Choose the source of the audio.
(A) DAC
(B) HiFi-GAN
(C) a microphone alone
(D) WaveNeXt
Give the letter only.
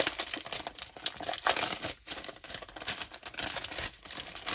C